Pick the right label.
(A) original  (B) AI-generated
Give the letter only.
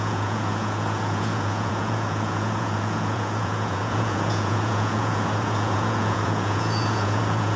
B